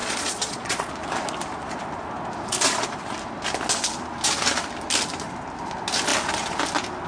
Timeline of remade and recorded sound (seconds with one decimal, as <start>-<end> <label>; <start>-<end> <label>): 0.0-0.9 remade; 0.9-7.1 recorded